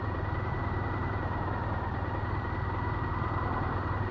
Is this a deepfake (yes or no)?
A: yes